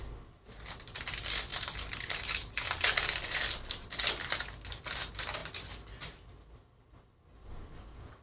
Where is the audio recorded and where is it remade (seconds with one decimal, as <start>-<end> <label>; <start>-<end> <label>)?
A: 0.0-8.2 recorded